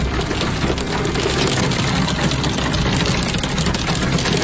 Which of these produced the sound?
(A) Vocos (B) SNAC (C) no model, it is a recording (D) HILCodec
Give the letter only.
C